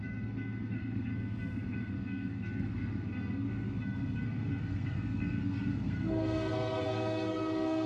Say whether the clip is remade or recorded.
remade